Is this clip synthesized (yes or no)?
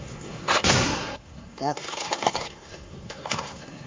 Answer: yes